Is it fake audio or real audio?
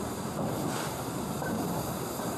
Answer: fake